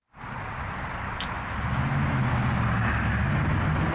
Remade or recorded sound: recorded